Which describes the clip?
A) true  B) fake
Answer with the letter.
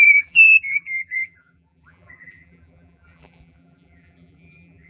B